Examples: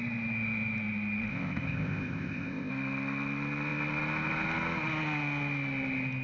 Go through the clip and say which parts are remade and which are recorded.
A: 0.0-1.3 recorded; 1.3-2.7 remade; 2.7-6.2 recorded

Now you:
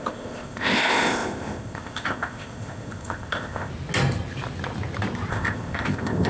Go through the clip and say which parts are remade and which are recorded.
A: 0.0-3.7 remade; 3.7-5.3 recorded; 5.3-6.3 remade

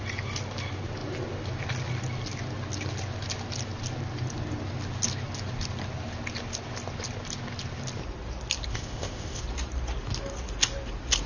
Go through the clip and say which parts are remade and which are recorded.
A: 0.0-8.7 recorded; 8.7-9.4 remade; 9.4-11.3 recorded

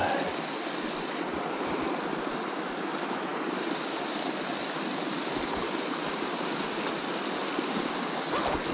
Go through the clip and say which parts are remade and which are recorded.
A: 0.0-8.7 recorded